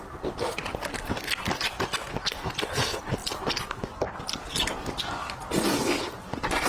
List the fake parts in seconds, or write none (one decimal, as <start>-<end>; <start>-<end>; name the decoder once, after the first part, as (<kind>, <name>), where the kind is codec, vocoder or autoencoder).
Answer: 0.0-0.7 (vocoder, BigVGAN v2); 2.7-3.2; 5.5-6.7